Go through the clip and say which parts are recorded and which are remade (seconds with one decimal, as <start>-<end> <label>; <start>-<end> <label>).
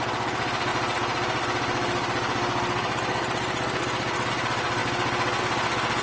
0.0-6.0 recorded